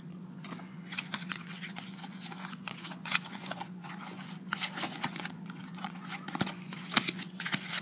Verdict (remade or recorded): remade